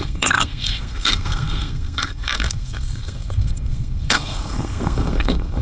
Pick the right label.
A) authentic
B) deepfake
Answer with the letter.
B